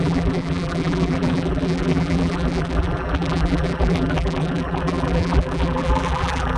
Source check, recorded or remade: remade